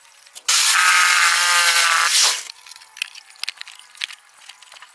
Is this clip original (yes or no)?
yes